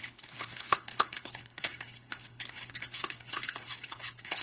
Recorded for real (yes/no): no